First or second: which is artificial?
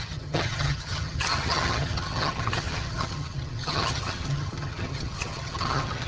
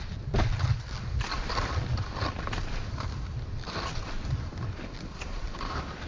first